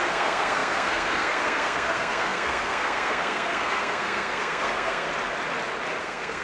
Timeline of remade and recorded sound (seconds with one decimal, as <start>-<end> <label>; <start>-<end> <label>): 0.0-5.1 remade; 5.1-6.0 recorded; 6.0-6.4 remade